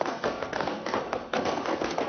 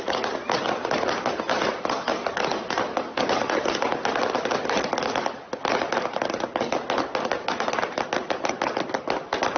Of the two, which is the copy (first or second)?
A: first